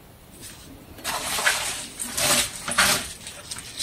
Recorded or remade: recorded